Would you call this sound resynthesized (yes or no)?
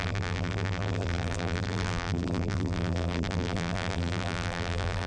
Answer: yes